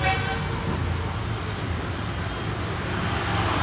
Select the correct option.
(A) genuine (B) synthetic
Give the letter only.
A